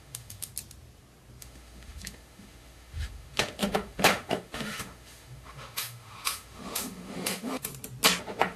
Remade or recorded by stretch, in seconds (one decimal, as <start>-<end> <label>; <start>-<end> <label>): 0.0-0.5 remade; 0.5-1.4 recorded; 1.4-7.7 remade; 7.7-8.2 recorded; 8.2-8.6 remade